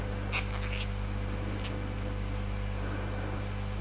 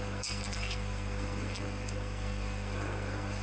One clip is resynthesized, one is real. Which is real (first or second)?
first